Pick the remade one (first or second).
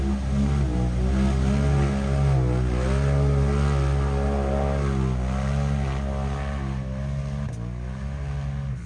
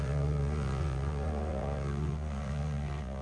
second